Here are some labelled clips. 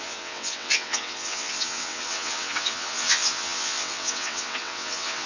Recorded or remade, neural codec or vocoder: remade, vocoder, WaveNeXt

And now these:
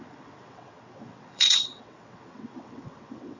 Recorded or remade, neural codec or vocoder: remade, vocoder, WaveNeXt